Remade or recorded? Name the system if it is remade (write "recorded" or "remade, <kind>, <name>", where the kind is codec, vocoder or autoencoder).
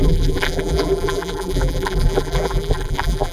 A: remade, vocoder, BigVGAN v2